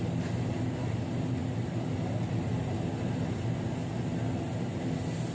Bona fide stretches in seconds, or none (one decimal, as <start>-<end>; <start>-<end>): 0.0-5.3